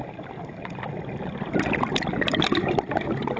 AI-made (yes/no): no